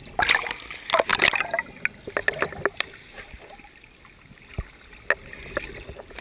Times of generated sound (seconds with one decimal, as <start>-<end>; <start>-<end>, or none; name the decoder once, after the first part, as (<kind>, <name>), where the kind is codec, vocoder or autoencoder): none